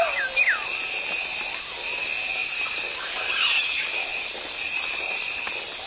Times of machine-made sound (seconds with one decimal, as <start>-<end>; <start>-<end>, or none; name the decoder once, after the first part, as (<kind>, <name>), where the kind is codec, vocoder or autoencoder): 2.4-3.0 (vocoder, BigVGAN v2); 4.1-5.5